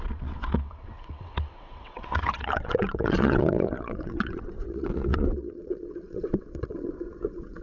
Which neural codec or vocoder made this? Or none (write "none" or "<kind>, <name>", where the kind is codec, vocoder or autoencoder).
vocoder, WaveNeXt